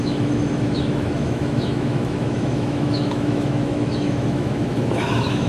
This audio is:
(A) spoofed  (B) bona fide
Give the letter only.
A